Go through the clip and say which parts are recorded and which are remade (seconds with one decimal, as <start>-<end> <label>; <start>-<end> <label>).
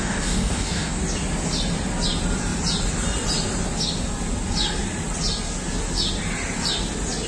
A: 0.0-1.0 remade; 1.0-7.3 recorded